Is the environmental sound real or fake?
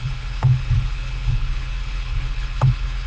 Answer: fake